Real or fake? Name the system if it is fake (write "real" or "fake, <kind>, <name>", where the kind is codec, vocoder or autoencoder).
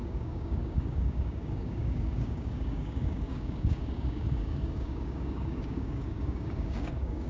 fake, codec, DAC